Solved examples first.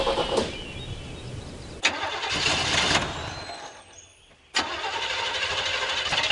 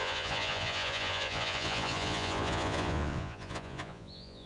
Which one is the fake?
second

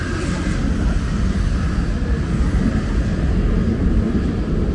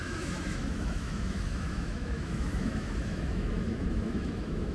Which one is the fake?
second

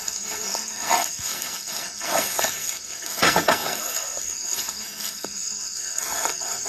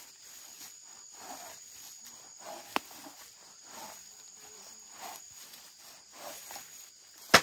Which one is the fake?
first